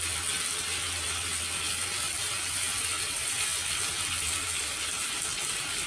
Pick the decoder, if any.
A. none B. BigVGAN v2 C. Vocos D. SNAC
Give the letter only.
A